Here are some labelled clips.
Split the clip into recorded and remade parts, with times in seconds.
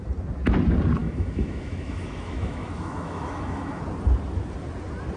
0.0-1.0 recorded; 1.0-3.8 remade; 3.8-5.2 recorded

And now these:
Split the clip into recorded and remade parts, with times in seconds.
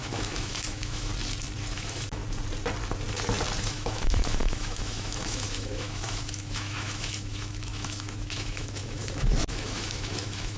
0.0-1.1 remade; 1.1-1.7 recorded; 1.7-2.2 remade; 2.2-3.6 recorded; 3.6-10.6 remade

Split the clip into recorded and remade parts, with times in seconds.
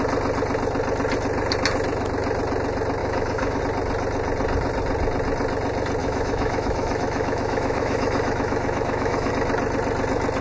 0.0-3.0 recorded; 3.0-3.6 remade; 3.6-6.0 recorded; 6.0-9.3 remade; 9.3-10.4 recorded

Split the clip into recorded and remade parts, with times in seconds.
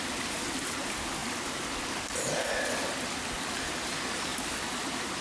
0.0-5.2 recorded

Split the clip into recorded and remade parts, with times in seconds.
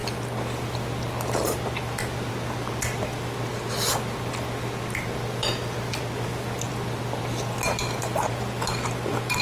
0.0-9.4 recorded